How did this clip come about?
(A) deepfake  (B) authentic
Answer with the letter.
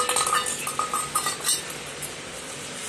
B